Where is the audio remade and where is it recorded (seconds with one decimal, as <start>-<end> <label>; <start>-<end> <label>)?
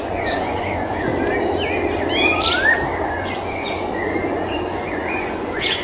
0.0-1.1 remade; 1.1-3.1 recorded; 3.1-5.8 remade